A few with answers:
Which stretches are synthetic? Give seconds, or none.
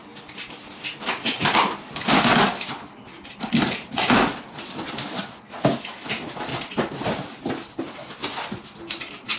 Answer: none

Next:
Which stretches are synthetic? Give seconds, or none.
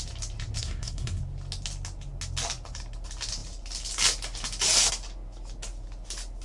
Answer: 0.6-1.2